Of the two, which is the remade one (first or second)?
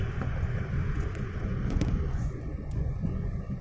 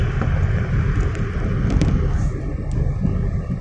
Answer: first